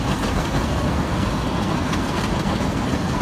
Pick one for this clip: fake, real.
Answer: fake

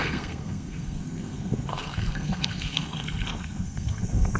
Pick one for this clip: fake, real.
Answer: fake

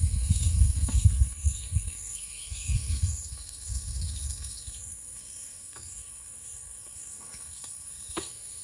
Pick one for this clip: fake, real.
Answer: fake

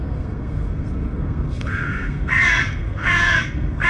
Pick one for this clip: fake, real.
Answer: fake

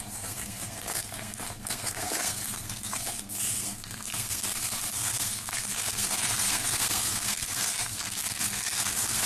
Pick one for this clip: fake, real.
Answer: fake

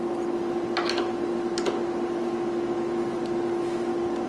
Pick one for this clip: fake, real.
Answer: real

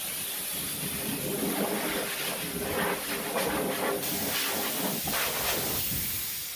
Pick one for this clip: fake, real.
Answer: real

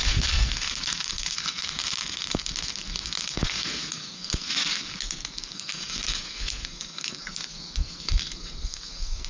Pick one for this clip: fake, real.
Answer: fake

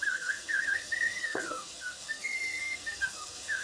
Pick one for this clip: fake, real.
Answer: fake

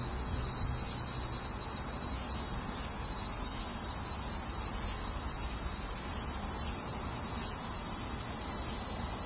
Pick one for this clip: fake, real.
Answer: real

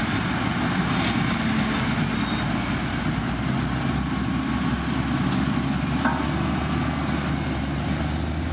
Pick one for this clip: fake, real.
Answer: real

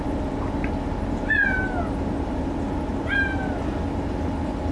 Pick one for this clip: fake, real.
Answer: real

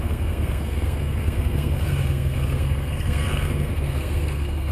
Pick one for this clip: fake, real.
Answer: fake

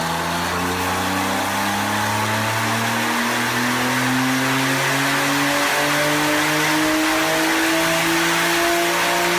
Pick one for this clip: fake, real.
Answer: real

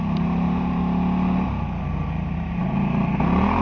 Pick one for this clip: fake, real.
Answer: real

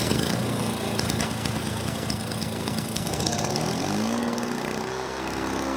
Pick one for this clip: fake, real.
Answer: fake